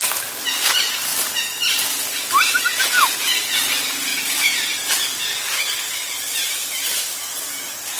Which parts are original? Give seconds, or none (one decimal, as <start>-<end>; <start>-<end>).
0.0-8.0